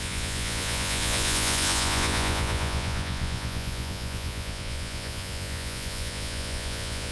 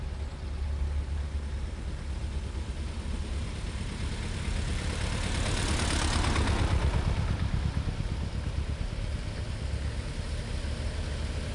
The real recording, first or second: second